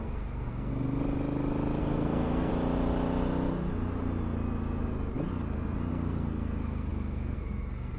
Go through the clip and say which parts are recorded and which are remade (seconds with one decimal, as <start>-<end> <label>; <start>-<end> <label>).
0.0-0.7 remade; 0.7-1.8 recorded; 1.8-2.5 remade; 2.5-5.9 recorded; 5.9-8.0 remade